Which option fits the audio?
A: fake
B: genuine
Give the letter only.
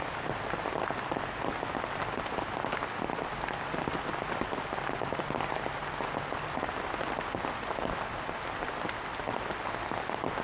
B